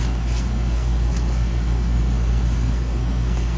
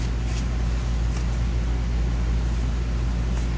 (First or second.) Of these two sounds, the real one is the second